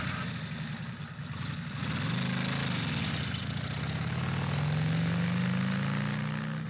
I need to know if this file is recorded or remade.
recorded